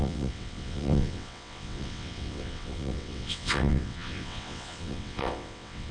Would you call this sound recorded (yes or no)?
no